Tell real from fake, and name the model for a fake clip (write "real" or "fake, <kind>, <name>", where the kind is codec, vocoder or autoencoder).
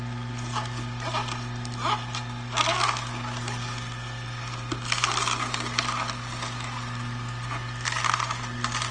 real